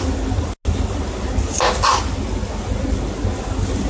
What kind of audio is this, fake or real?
real